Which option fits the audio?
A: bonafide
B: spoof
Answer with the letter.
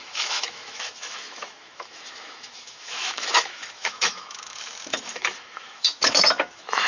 B